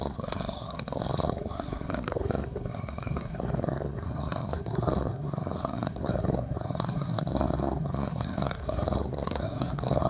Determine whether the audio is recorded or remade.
remade